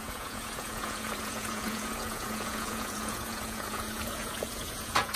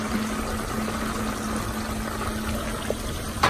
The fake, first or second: first